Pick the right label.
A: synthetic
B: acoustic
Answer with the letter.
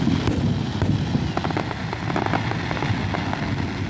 B